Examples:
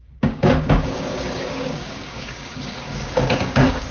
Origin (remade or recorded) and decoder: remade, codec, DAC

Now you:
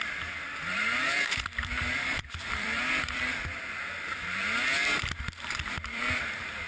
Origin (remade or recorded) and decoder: remade, vocoder, BigVGAN v2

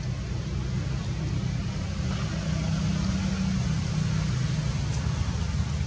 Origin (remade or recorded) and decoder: recorded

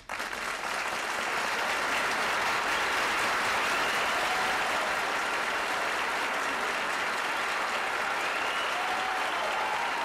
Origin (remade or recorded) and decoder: recorded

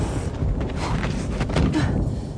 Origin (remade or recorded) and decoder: recorded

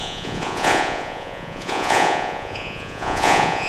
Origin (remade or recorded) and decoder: remade, vocoder, Vocos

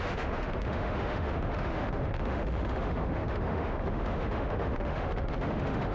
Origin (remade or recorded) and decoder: remade, autoencoder, DAC-VAE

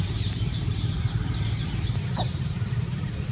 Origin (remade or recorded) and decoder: remade, vocoder, BigVGAN v2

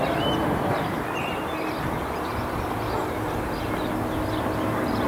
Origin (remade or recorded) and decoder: recorded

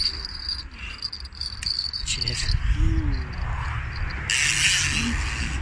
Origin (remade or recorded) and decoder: recorded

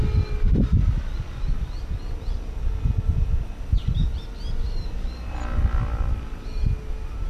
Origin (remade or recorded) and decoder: recorded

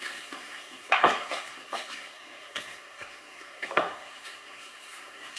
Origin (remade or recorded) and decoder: remade, codec, SNAC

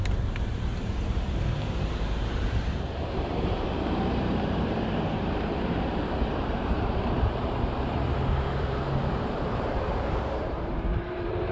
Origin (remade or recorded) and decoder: remade, vocoder, BigVGAN v2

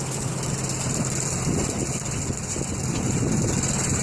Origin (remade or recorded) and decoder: recorded